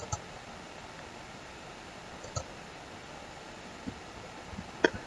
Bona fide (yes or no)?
yes